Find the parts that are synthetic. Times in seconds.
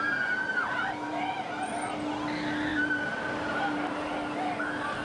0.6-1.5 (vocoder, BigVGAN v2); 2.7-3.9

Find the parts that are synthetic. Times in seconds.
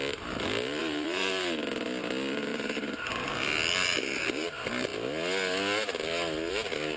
0.8-1.3 (vocoder, BigVGAN v2); 2.5-3.1; 3.8-4.5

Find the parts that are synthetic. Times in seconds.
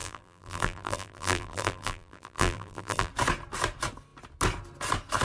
0.0-3.1 (vocoder, BigVGAN v2)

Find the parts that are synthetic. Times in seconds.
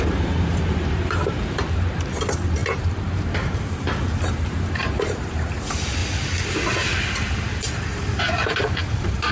0.0-6.0 (vocoder, BigVGAN v2); 7.3-9.3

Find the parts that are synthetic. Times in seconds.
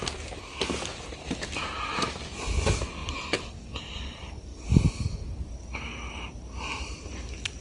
3.0-4.0 (vocoder, BigVGAN v2)